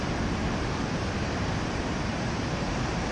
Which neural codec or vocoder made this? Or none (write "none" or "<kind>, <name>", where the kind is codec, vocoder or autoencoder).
vocoder, BigVGAN v2